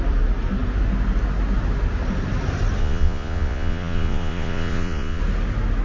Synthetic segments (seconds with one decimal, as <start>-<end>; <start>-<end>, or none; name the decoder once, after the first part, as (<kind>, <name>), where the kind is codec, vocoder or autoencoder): 2.8-5.2 (vocoder, Vocos)